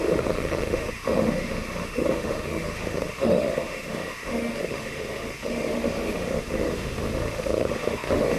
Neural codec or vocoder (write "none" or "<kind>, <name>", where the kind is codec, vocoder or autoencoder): autoencoder, DAC-VAE